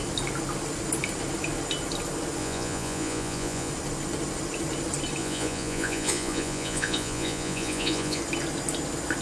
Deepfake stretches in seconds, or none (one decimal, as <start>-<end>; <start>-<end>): 2.4-3.7; 5.2-8.2